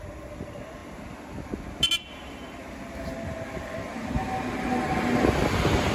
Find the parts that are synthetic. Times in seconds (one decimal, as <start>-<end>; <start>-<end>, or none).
none